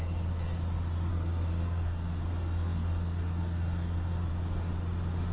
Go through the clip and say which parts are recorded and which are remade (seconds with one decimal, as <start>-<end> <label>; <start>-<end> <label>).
0.0-1.1 recorded; 1.1-4.3 remade; 4.3-5.3 recorded